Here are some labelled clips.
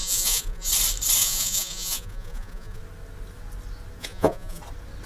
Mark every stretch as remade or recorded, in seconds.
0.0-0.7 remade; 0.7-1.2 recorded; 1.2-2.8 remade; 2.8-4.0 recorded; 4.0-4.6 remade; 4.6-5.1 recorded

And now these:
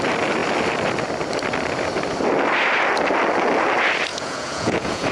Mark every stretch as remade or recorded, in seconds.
0.0-4.1 recorded; 4.1-5.1 remade